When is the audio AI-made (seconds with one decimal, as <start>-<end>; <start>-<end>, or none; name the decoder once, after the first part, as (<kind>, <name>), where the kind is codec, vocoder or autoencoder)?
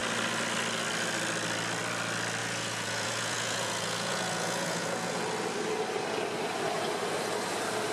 2.4-5.2 (vocoder, Vocos)